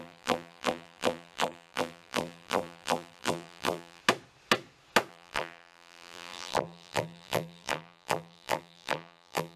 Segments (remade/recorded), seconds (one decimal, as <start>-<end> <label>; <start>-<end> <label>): 0.0-4.0 remade; 4.0-5.1 recorded; 5.1-9.6 remade